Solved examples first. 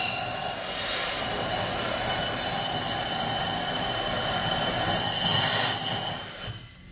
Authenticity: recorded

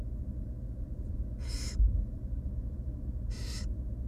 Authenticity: remade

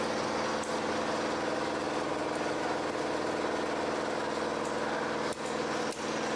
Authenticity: recorded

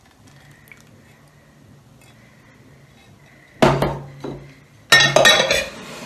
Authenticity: recorded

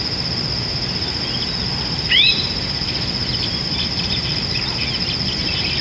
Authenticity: recorded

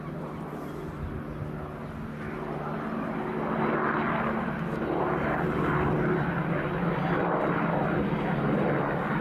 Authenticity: recorded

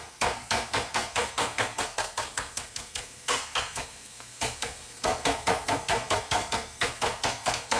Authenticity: remade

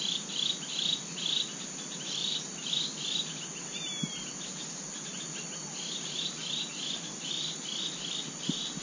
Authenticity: recorded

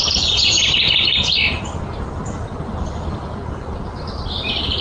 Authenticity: recorded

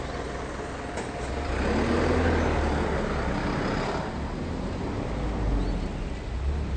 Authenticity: recorded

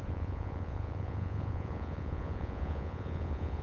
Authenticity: remade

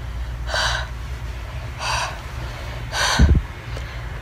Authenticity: recorded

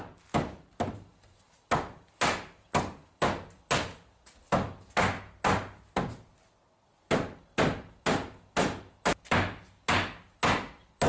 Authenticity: recorded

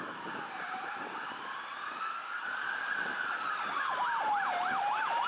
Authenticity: recorded